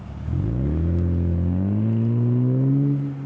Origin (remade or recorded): recorded